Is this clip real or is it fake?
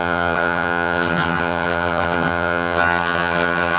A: fake